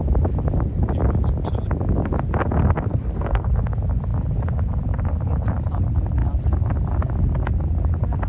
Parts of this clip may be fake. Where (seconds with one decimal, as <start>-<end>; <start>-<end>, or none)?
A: 2.9-3.5